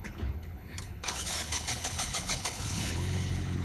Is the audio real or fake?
fake